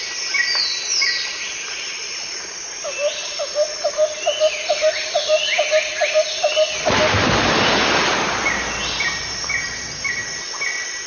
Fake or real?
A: real